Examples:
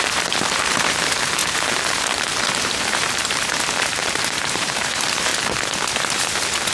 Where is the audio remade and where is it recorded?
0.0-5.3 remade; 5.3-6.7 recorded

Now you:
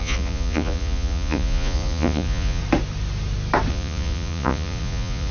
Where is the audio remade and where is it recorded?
0.0-2.6 remade; 2.6-3.7 recorded; 3.7-5.3 remade

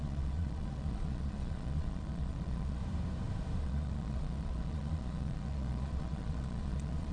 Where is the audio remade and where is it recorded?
0.0-2.8 remade; 2.8-3.6 recorded; 3.6-7.1 remade

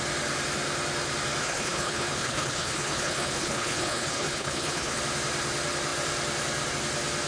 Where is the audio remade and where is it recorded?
0.0-1.4 recorded; 1.4-5.0 remade; 5.0-7.3 recorded

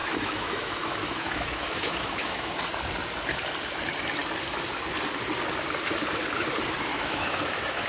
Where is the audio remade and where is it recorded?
0.0-2.5 remade; 2.5-6.9 recorded; 6.9-7.9 remade

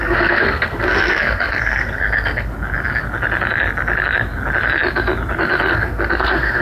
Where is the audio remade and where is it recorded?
0.0-2.5 remade; 2.5-5.7 recorded; 5.7-6.6 remade